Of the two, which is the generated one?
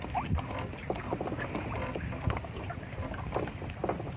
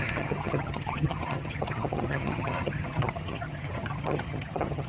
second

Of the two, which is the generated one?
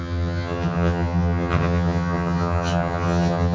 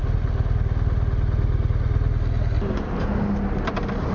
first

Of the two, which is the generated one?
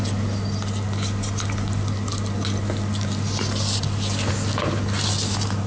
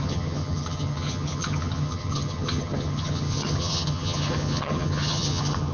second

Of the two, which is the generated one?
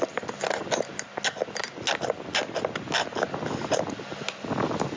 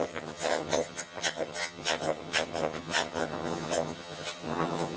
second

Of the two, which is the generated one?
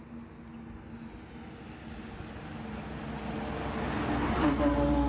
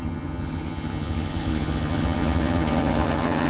second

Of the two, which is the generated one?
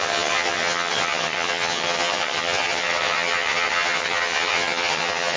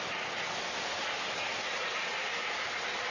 first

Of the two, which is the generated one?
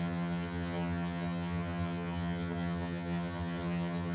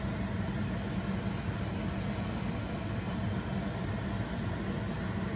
first